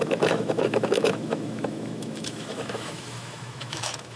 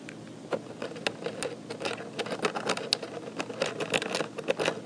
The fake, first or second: first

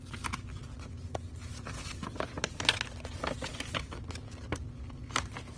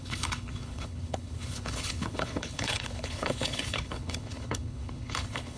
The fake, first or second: second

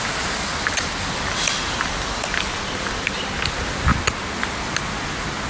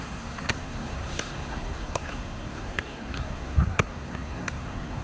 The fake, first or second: second